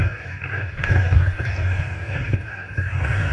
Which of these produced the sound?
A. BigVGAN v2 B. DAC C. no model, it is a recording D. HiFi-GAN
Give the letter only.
B